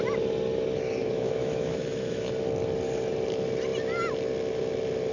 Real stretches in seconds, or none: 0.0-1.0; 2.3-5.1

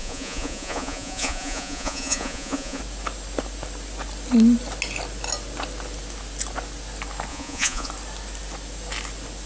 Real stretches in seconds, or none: 2.8-7.3; 7.9-9.5

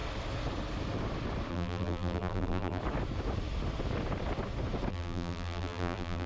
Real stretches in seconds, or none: 0.0-1.5; 2.8-4.9

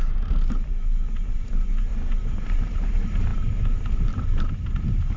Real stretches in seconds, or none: 0.7-1.3; 1.9-2.6

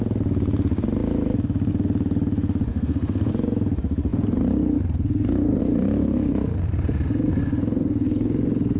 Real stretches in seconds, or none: 0.0-2.7; 3.3-8.8

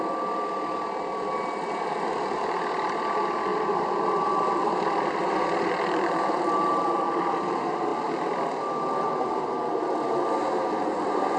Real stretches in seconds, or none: 0.0-3.5; 7.4-11.4